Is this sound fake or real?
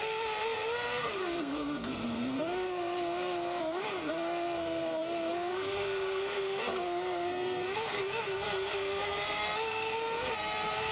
fake